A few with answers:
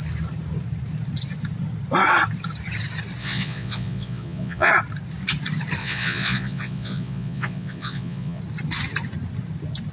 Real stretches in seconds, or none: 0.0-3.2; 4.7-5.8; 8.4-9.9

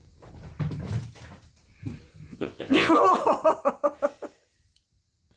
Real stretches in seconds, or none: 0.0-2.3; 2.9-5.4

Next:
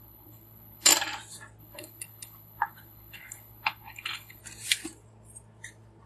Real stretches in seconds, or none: 0.9-1.6; 4.4-6.1

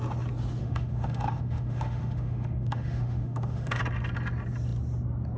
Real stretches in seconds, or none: 0.0-0.6; 3.8-5.4

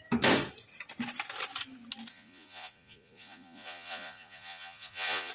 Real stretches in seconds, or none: 0.0-2.1

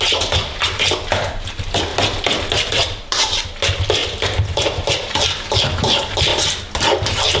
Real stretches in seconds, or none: 0.0-4.0; 5.1-7.4

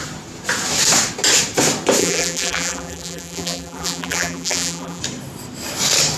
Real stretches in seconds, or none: 0.0-2.0; 5.0-6.2